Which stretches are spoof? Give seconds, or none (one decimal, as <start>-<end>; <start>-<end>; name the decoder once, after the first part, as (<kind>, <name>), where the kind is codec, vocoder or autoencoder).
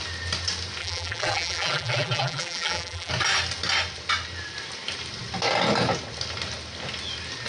0.8-3.1 (vocoder, BigVGAN v2)